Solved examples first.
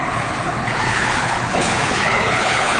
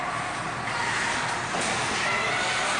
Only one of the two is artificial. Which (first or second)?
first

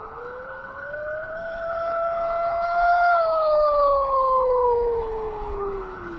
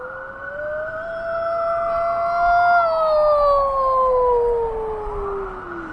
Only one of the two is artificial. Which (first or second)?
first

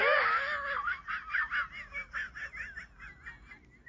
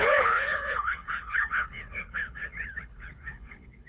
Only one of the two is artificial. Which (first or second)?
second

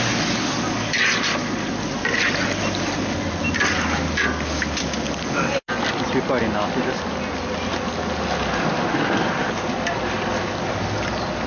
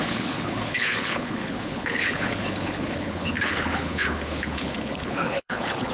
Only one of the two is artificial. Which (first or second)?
second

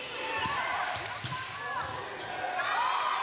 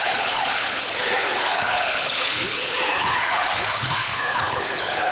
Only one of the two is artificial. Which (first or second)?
second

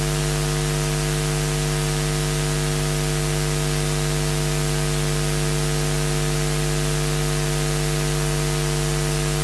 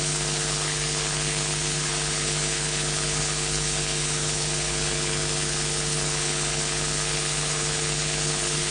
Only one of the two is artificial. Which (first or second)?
second